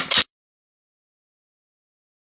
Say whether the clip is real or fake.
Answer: real